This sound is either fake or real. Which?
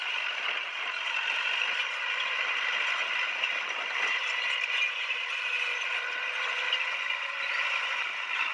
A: real